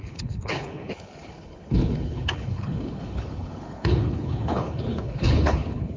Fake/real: fake